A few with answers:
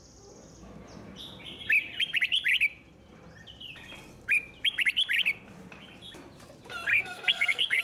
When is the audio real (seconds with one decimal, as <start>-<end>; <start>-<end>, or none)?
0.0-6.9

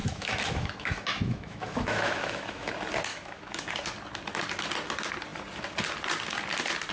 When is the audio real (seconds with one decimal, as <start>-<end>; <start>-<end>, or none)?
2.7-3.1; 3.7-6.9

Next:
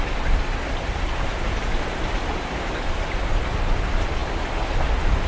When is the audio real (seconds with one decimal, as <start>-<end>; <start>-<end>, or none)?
0.0-1.3; 2.8-5.3

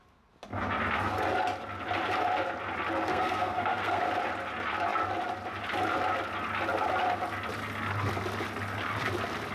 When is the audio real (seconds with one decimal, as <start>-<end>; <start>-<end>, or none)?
0.0-3.1; 4.0-9.5